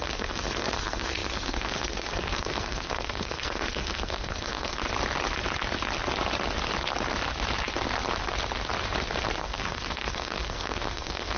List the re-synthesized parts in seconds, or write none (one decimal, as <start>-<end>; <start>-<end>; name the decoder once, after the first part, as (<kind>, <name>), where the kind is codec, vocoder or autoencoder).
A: 0.0-4.8 (codec, SNAC); 9.4-11.4